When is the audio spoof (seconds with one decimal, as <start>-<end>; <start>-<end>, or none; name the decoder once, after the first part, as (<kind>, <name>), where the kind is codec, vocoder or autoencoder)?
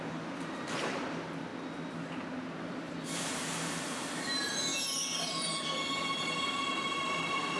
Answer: 0.0-1.5 (vocoder, BigVGAN v2); 2.6-4.7; 5.2-7.6